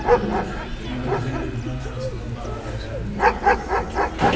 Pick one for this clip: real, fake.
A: real